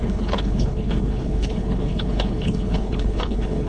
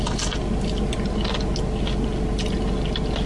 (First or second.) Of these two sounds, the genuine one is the second